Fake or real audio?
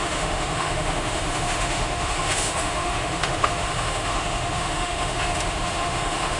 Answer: fake